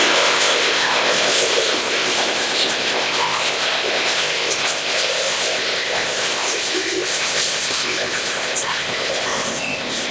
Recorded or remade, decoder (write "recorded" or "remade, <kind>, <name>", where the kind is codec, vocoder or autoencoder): remade, codec, ZipCodec